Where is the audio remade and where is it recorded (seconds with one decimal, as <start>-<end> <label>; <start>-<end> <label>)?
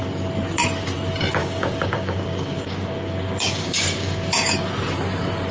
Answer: 0.0-1.4 recorded; 1.4-4.7 remade; 4.7-5.5 recorded